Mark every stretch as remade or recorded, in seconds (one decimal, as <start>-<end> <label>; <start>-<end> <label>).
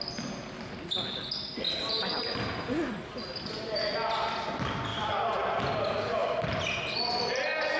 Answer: 0.0-4.9 recorded; 4.9-5.6 remade; 5.6-6.2 recorded; 6.2-6.8 remade; 6.8-7.8 recorded